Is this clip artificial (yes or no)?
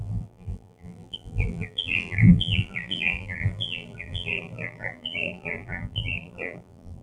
yes